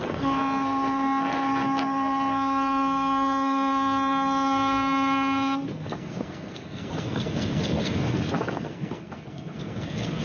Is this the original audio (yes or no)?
no